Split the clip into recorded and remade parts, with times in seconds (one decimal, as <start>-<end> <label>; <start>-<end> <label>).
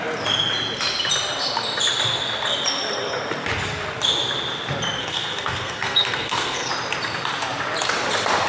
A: 0.0-5.0 recorded; 5.0-6.7 remade; 6.7-8.5 recorded